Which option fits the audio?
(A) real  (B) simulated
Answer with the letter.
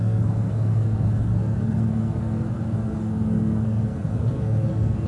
B